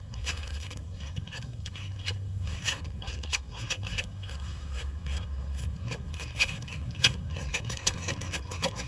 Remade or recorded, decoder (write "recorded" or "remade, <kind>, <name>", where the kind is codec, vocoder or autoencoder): remade, codec, SNAC